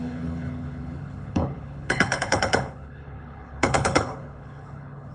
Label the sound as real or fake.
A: fake